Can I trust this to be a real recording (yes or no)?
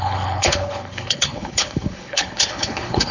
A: no